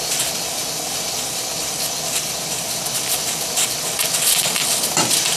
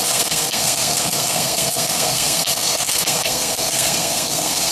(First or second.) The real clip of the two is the first